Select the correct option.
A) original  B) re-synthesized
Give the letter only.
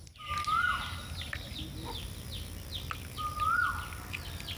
A